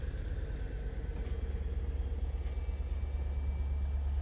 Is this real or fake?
real